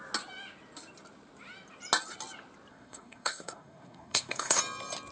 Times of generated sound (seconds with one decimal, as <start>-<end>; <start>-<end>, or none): 2.7-4.6

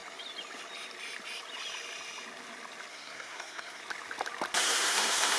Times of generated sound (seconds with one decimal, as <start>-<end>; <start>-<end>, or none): 2.9-3.8; 4.6-5.4

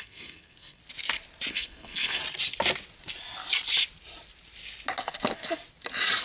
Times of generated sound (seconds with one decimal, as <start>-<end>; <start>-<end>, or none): 0.0-0.8; 1.5-2.2

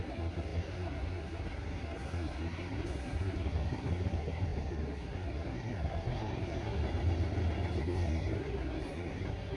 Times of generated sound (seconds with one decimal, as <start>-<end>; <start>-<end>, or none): 0.0-6.8; 7.8-9.6